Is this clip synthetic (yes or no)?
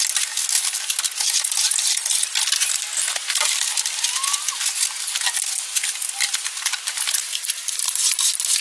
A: no